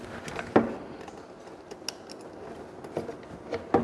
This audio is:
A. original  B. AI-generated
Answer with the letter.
A